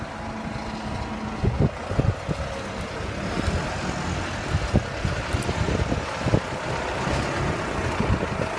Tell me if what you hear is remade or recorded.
recorded